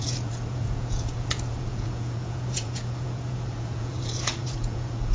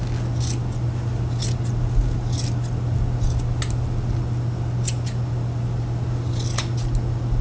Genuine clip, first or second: second